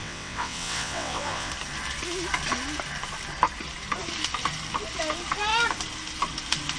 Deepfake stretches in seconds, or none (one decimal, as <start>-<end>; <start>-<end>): 0.0-1.5